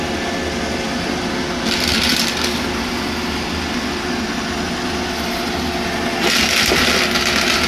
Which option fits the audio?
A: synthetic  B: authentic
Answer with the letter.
B